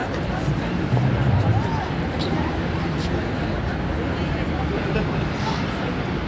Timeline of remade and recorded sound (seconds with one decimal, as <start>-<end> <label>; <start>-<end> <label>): 0.0-3.7 remade; 3.7-6.3 recorded